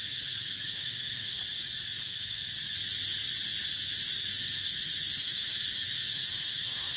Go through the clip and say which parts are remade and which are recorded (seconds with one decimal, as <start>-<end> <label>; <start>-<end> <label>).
0.0-1.4 remade; 1.4-2.0 recorded; 2.0-2.4 remade; 2.4-4.2 recorded; 4.2-7.0 remade